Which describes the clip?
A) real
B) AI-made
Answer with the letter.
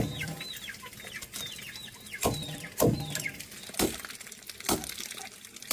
A